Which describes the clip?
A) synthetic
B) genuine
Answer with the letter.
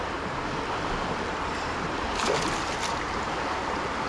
B